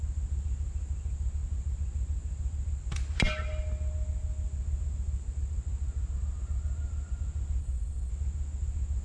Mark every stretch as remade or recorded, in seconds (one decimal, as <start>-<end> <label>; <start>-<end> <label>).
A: 0.0-7.6 recorded; 7.6-8.1 remade; 8.1-9.0 recorded